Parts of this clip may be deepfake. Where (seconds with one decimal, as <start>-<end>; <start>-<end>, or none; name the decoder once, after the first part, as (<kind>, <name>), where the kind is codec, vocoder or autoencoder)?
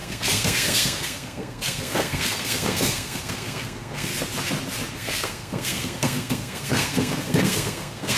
0.0-4.1 (codec, SNAC); 4.9-8.2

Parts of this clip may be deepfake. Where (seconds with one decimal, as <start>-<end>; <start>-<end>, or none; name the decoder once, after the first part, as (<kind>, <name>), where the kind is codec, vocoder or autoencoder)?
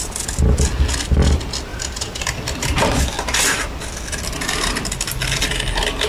1.7-5.4 (vocoder, BigVGAN v2)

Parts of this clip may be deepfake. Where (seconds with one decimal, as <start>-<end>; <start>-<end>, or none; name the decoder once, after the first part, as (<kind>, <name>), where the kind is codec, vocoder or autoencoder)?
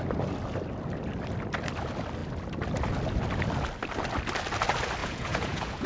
5.0-5.9 (vocoder, Vocos)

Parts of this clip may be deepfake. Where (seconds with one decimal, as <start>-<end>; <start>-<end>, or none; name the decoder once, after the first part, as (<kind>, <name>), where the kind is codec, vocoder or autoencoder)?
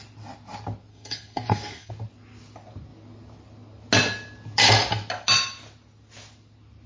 0.9-1.9 (codec, SNAC)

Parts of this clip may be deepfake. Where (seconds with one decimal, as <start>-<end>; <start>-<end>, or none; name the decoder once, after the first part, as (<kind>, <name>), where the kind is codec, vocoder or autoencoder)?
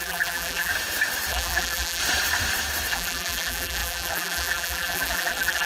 0.0-0.7 (vocoder, BigVGAN v2); 1.3-2.0; 2.9-5.7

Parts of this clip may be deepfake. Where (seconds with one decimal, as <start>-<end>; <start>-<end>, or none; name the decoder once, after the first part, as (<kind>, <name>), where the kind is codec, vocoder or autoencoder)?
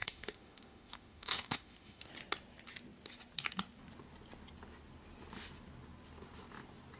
0.0-2.1 (autoencoder, DAC-VAE)